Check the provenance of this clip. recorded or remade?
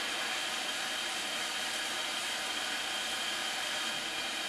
remade